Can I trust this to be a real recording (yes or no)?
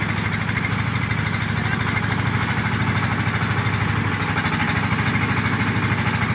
yes